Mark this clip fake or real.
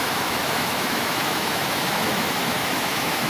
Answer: fake